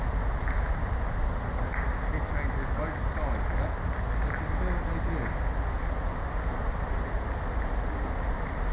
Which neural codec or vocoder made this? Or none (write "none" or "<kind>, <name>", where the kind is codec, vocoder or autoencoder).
none